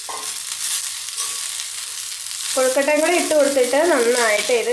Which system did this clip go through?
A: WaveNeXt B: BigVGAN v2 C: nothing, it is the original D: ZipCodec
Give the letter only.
C